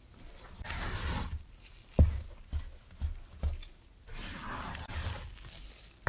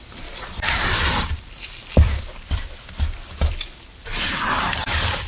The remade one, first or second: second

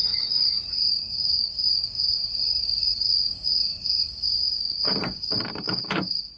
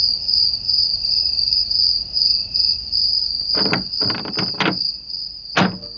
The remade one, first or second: first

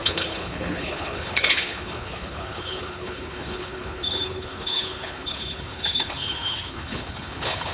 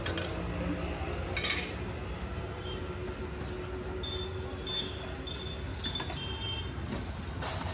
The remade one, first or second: first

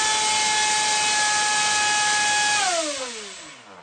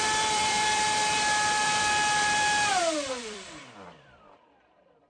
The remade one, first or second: second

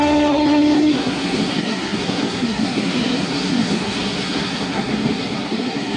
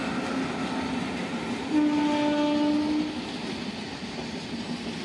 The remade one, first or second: first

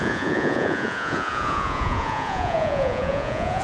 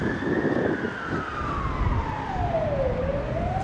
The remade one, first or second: first